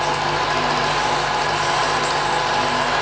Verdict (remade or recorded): recorded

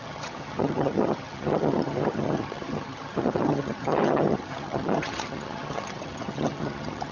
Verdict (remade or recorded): remade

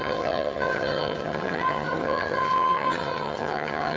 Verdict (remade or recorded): remade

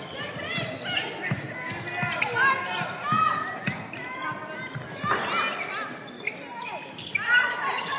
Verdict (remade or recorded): recorded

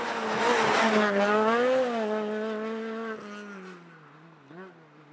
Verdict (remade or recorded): recorded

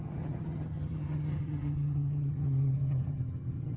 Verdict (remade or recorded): remade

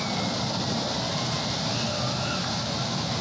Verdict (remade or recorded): recorded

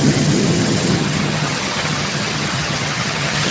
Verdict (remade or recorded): remade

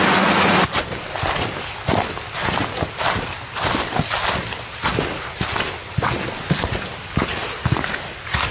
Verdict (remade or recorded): recorded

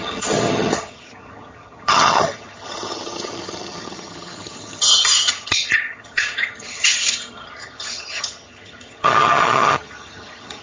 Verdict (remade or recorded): remade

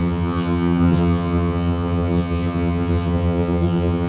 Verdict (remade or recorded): remade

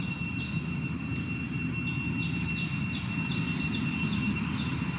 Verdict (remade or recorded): recorded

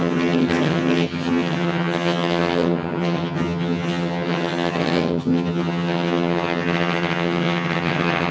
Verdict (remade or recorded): remade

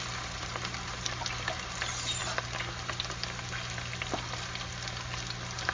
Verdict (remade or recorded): recorded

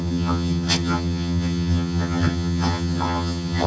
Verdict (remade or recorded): remade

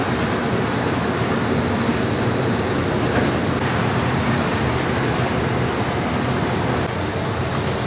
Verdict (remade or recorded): recorded